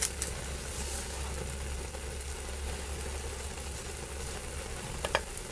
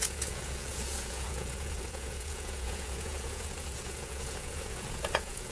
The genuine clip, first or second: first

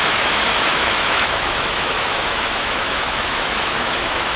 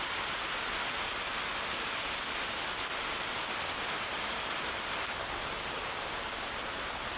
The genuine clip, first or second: second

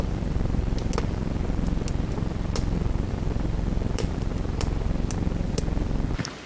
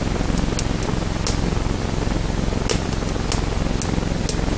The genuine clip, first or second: second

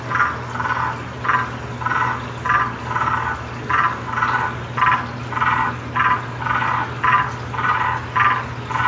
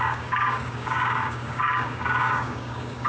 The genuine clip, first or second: first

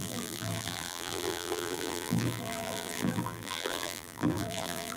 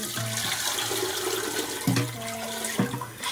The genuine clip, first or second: second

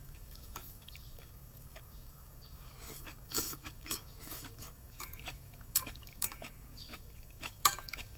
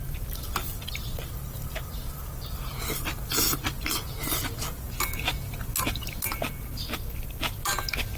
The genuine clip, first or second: second